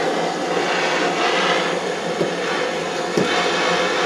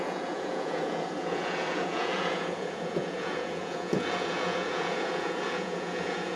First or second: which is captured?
first